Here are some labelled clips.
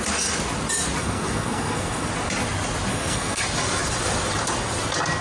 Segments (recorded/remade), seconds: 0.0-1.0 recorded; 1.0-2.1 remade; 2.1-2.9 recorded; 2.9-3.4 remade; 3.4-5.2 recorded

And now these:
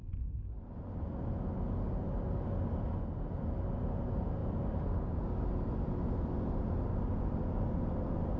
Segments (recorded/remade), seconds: 0.0-8.4 recorded

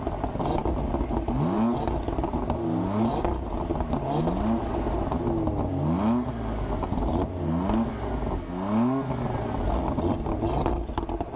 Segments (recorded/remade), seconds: 0.0-11.4 recorded

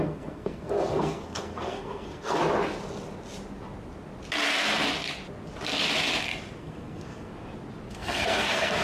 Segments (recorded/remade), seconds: 0.0-2.4 remade; 2.4-6.6 recorded; 6.6-7.3 remade; 7.3-7.9 recorded; 7.9-8.8 remade

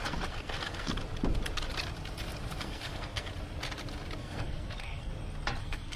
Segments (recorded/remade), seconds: 0.0-0.9 remade; 0.9-2.6 recorded; 2.6-3.3 remade; 3.3-4.2 recorded; 4.2-5.1 remade; 5.1-5.6 recorded; 5.6-6.0 remade